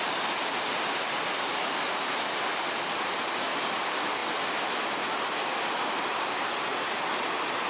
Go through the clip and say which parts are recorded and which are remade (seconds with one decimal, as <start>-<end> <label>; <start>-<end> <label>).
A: 0.0-7.7 recorded